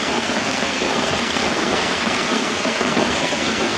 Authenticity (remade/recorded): remade